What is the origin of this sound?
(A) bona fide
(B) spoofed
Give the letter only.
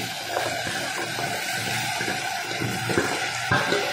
A